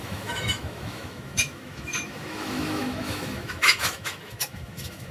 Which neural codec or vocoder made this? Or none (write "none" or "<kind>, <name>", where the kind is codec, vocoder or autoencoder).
autoencoder, DAC-VAE